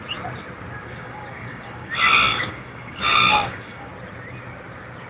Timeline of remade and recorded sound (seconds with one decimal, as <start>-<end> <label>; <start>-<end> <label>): 0.0-0.8 recorded; 0.8-1.9 remade; 1.9-2.3 recorded; 2.3-3.9 remade; 3.9-5.1 recorded